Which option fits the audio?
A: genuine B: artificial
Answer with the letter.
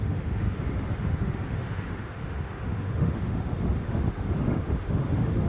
B